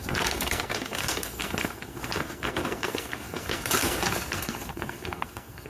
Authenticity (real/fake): fake